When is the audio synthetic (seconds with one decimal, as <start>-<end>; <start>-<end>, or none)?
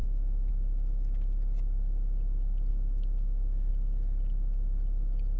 0.0-0.5; 2.7-3.7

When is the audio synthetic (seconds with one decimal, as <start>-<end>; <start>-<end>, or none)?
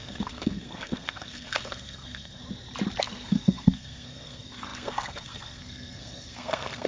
0.0-2.4; 3.0-6.9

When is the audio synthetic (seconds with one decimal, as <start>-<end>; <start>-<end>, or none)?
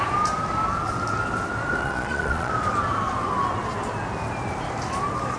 1.8-2.5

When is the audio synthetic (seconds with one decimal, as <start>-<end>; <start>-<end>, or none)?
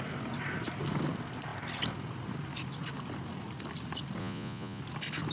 4.2-4.8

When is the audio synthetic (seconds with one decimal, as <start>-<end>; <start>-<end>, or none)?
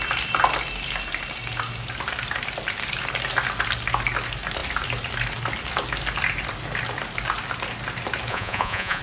8.3-9.0